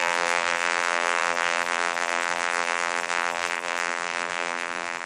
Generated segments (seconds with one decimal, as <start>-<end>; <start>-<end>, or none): 0.0-5.1